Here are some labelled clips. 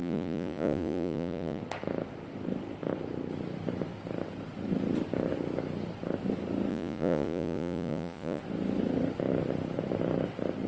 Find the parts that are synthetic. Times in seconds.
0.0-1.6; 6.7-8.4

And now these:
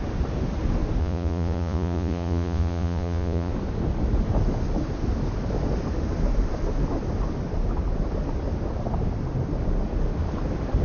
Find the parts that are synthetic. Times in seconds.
1.0-3.5

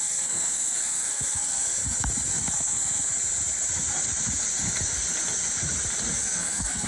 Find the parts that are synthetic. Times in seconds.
0.0-1.8; 2.3-3.1; 6.2-6.9

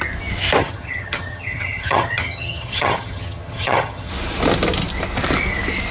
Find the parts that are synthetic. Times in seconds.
0.6-4.1

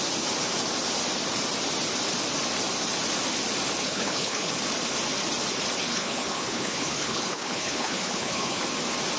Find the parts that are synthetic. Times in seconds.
3.8-4.5; 5.9-8.6